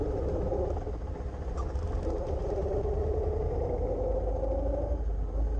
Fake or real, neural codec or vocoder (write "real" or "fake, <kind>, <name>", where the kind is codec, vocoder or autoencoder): real